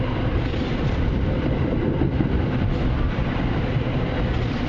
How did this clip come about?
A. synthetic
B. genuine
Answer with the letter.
A